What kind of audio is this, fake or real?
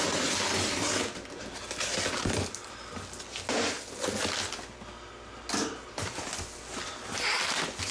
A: real